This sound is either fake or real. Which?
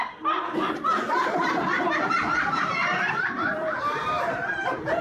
fake